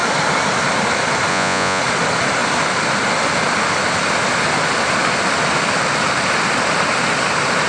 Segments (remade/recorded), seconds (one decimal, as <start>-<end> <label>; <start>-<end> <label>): 0.0-1.3 recorded; 1.3-1.8 remade; 1.8-7.7 recorded